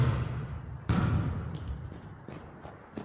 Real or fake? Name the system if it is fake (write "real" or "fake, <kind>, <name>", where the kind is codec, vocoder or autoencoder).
real